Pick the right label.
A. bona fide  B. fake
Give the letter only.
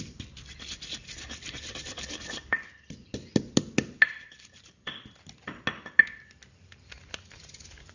A